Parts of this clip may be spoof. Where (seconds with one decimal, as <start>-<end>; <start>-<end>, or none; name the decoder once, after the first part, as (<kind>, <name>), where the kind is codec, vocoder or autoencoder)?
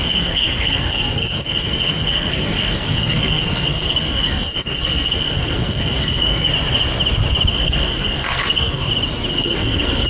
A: 0.0-6.5 (codec, SNAC); 7.5-8.8; 9.3-10.1